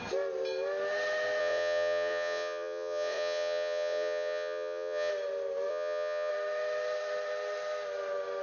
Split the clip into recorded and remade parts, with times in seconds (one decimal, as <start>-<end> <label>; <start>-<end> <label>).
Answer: 0.0-1.4 recorded; 1.4-5.1 remade; 5.1-5.7 recorded; 5.7-6.3 remade; 6.3-8.4 recorded